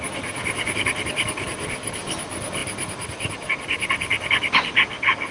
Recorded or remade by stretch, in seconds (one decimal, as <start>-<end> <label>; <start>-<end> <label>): 0.0-5.3 recorded